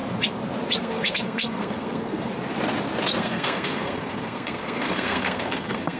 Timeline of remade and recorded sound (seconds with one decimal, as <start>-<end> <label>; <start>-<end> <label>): 0.0-0.8 recorded; 0.8-2.3 remade; 2.3-3.2 recorded; 3.2-6.0 remade